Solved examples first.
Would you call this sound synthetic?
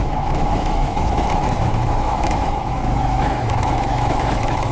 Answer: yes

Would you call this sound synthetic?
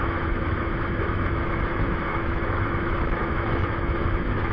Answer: yes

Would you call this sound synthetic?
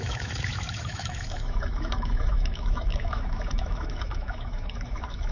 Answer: yes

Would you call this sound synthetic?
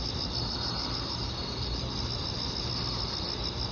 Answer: no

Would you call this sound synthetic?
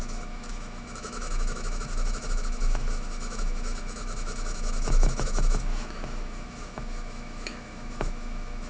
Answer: yes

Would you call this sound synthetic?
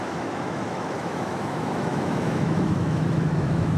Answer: yes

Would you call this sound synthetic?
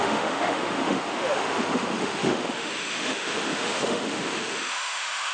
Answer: yes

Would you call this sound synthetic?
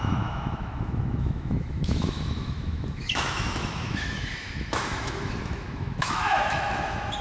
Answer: yes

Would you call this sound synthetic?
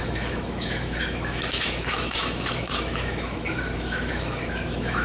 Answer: yes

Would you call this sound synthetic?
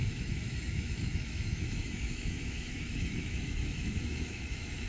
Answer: yes